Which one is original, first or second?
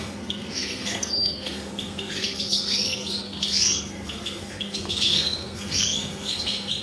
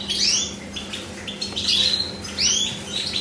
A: second